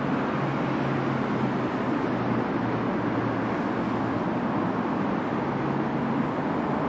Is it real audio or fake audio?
real